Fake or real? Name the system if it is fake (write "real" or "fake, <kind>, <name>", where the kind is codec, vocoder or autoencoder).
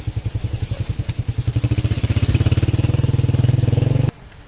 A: real